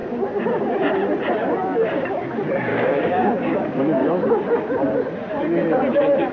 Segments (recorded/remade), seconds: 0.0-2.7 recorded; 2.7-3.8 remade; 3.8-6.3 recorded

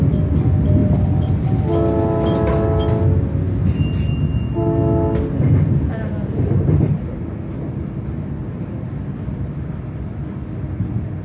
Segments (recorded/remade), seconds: 0.0-11.2 recorded

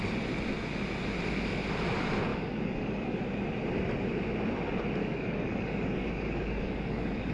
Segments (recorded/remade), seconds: 0.0-2.3 recorded; 2.3-3.2 remade; 3.2-5.0 recorded; 5.0-7.3 remade